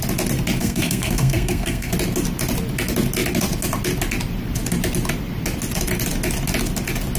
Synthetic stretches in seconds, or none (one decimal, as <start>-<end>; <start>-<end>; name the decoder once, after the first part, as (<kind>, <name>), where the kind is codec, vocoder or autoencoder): 0.6-1.9 (codec, SNAC)